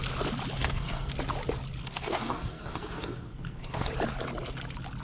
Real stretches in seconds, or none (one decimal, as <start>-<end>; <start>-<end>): 0.0-0.6; 1.1-1.8; 3.9-5.0